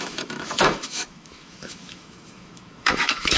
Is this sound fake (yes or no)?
yes